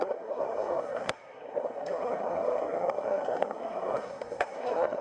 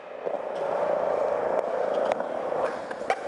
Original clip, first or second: second